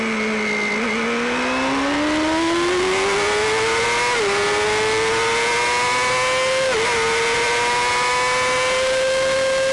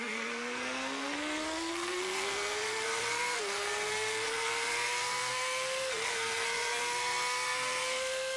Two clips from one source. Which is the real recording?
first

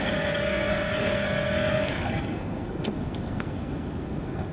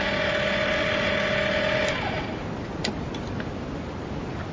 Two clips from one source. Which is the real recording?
second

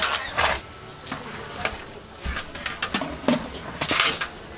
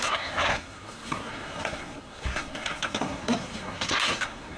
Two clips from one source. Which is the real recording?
first